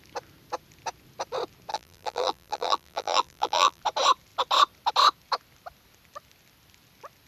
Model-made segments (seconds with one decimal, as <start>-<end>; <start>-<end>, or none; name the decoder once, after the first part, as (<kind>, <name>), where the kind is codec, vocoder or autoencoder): 1.7-3.8 (vocoder, BigVGAN v2)